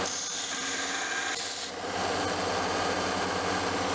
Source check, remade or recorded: recorded